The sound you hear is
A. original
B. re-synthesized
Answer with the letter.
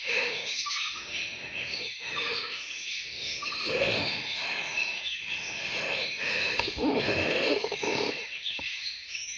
B